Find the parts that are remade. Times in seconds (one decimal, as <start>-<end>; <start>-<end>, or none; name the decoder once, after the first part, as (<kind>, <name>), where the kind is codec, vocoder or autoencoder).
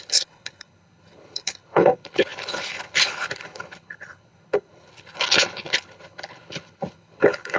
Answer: 0.0-7.6 (codec, HILCodec)